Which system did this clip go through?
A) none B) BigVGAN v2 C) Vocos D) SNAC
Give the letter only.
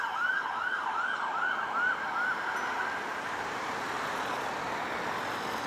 A